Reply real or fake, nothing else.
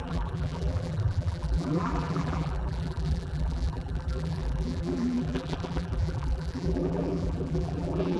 fake